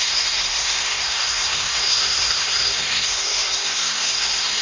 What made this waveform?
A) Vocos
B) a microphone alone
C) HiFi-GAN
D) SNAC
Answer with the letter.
D